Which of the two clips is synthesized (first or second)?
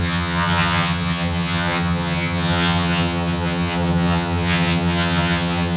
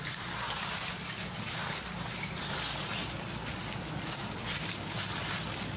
first